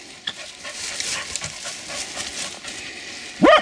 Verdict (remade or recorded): recorded